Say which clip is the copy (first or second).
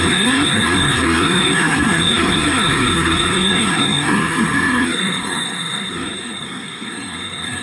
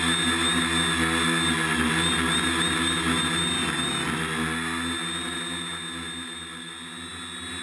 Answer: first